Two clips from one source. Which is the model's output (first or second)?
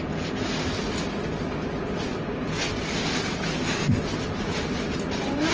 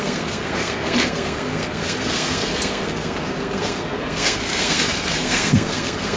second